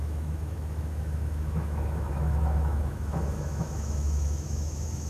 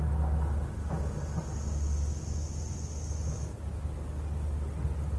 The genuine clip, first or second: second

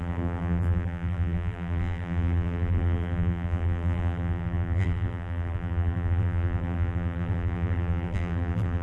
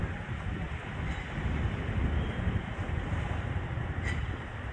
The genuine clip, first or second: second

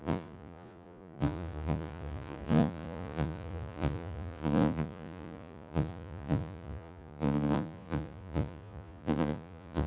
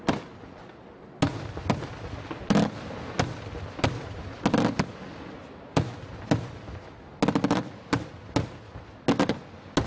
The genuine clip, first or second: second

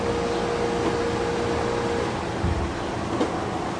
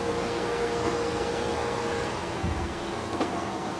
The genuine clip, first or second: first